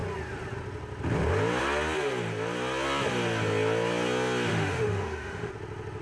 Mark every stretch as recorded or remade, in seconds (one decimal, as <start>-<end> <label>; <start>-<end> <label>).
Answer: 0.0-4.5 recorded; 4.5-5.5 remade; 5.5-6.0 recorded